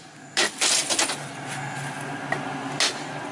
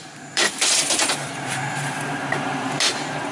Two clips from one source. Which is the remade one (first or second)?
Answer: second